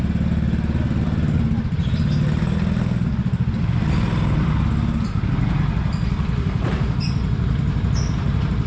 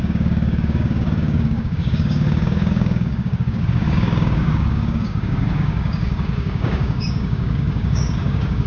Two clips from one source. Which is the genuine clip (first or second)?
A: first